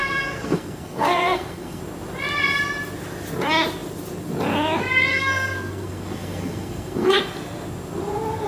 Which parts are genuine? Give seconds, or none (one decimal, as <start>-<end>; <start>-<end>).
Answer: 1.8-5.1; 7.2-8.5